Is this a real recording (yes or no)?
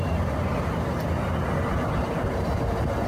yes